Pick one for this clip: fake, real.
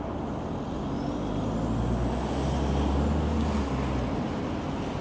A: real